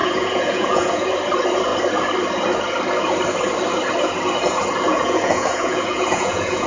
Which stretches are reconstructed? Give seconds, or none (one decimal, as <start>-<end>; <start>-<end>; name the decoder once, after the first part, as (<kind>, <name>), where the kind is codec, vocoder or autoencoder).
0.0-1.1 (vocoder, Vocos); 4.9-6.7